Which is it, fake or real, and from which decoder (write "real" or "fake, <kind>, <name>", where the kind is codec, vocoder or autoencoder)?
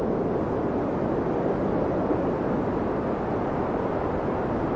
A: real